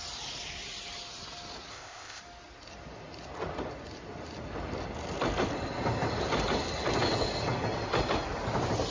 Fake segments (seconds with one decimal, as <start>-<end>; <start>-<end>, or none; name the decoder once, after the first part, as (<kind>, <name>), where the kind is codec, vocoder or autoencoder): 1.7-2.2 (codec, ZipCodec)